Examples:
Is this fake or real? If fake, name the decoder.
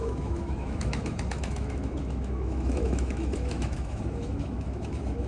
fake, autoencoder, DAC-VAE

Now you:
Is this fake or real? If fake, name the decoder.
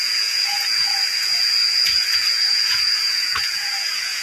fake, vocoder, Vocos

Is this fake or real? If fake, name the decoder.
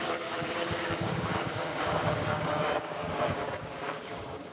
fake, codec, DAC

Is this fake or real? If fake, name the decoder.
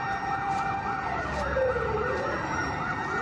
fake, vocoder, BigVGAN v2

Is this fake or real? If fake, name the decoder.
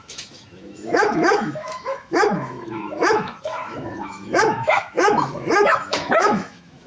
fake, autoencoder, DAC-VAE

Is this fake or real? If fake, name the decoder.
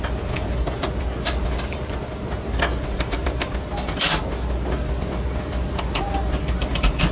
real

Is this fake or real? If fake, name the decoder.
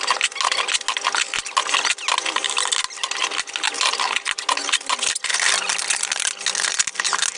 real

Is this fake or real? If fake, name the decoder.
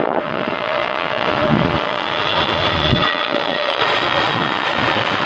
fake, vocoder, Vocos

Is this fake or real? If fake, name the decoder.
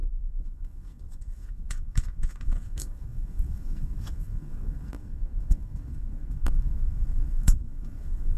fake, codec, SNAC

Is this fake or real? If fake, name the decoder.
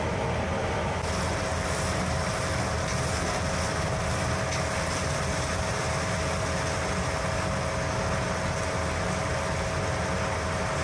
real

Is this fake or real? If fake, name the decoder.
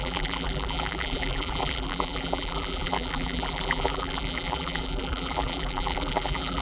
fake, vocoder, BigVGAN v2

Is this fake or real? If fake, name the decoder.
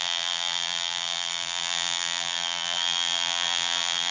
fake, vocoder, BigVGAN v2